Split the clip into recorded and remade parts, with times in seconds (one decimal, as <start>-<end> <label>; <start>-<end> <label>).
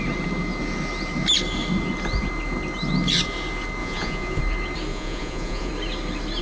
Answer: 0.0-3.8 recorded; 3.8-4.4 remade; 4.4-4.9 recorded; 4.9-5.7 remade; 5.7-6.4 recorded